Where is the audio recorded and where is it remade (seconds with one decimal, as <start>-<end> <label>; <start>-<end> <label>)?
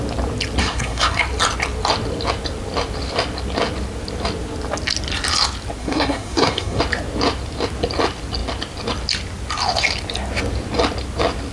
0.0-0.6 recorded; 0.6-1.2 remade; 1.2-5.8 recorded; 5.8-6.8 remade; 6.8-11.5 recorded